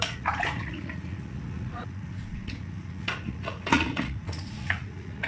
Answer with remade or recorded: remade